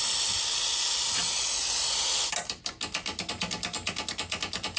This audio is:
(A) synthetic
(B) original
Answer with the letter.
B